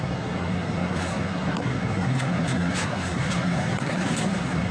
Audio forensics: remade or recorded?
remade